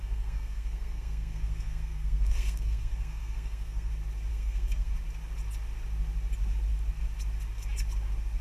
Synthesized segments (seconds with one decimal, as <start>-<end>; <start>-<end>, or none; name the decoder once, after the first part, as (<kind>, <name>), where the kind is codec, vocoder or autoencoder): 0.0-3.9 (codec, SNAC); 4.3-4.9